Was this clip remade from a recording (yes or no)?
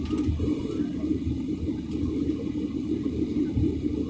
no